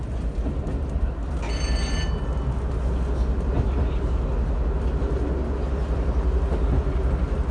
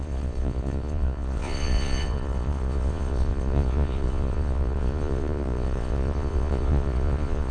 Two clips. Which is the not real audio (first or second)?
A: second